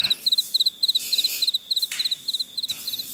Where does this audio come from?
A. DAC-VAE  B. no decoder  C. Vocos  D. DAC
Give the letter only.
B